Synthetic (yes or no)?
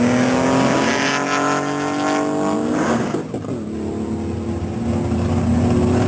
no